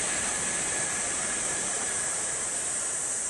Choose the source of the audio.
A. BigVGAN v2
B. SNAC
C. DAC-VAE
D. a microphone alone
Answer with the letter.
A